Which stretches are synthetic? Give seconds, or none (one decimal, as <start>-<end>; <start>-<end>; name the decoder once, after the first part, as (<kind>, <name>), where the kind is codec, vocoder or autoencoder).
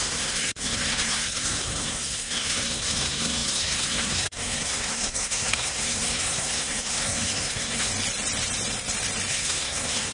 0.0-7.9 (codec, SNAC); 9.3-10.1